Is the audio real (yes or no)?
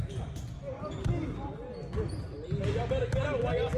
yes